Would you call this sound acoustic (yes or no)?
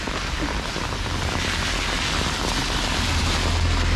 yes